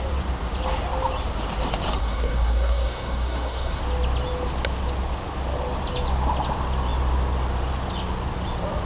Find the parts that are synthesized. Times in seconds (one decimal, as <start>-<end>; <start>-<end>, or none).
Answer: 2.0-3.8